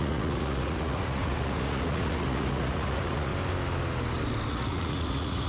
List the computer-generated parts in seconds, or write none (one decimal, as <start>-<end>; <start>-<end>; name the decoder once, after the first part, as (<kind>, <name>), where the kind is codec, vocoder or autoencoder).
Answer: 0.0-3.3 (vocoder, Vocos); 4.5-5.5